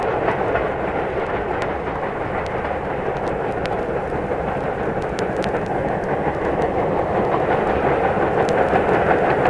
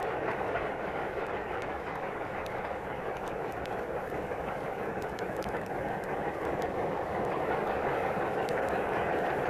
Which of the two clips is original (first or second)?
first